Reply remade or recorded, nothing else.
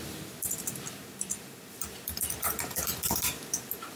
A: remade